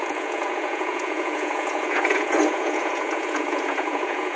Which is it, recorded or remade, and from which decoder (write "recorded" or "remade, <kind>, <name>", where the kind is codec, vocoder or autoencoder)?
remade, vocoder, Vocos